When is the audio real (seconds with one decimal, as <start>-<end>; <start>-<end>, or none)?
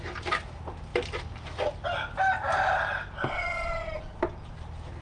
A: 0.0-5.0